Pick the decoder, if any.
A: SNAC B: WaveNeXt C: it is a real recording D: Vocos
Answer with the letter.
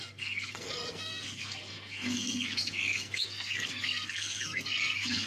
A